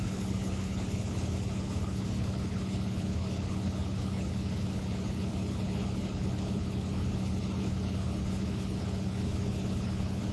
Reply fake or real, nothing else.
fake